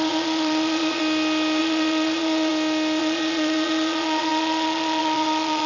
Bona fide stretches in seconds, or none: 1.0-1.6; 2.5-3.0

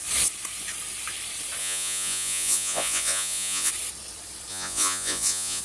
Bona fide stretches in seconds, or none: 0.0-1.6; 3.7-4.5

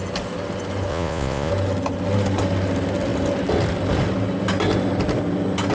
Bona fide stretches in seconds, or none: 0.0-0.9; 1.5-5.7

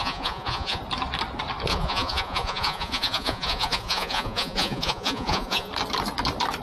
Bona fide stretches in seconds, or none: 0.8-1.7; 5.7-6.6

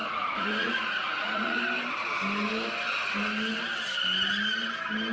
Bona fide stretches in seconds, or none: 1.6-5.1